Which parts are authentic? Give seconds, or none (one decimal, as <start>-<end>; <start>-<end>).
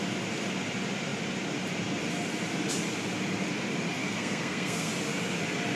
0.0-4.0; 4.9-5.8